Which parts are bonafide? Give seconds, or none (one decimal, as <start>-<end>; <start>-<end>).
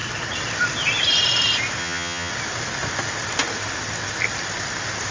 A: 0.0-1.8; 2.3-5.1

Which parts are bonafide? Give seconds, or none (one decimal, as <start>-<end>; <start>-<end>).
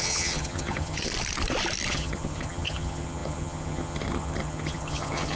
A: 1.1-1.9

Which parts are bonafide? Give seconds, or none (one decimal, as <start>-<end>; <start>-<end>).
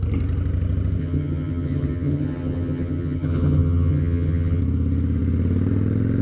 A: 0.0-1.0; 4.6-6.2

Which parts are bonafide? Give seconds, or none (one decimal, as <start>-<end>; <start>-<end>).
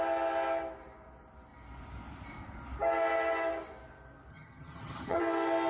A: 0.0-4.3; 5.2-5.7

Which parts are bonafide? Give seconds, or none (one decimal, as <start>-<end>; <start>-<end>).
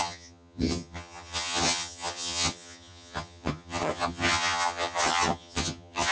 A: none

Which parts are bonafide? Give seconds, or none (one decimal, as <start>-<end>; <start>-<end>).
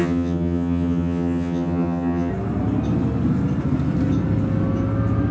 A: 2.3-5.3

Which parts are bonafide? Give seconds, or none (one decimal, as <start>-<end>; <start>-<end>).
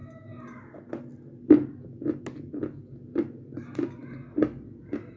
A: 0.0-5.2